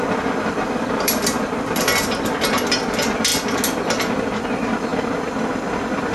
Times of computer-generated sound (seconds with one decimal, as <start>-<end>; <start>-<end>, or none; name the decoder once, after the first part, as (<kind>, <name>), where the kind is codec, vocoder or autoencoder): 0.0-3.3 (vocoder, BigVGAN v2); 4.1-4.9